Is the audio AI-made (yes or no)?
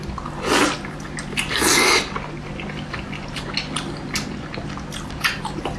no